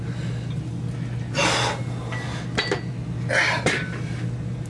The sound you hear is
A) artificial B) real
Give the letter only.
B